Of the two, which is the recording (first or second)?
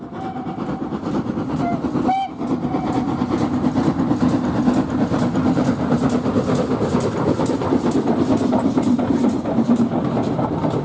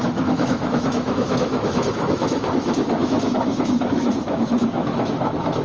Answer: first